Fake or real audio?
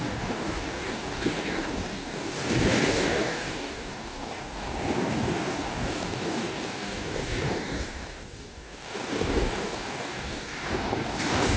fake